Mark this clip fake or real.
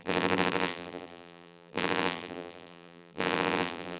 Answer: fake